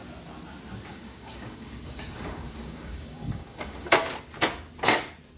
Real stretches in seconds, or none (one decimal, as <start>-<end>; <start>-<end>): 0.0-0.9; 4.1-5.4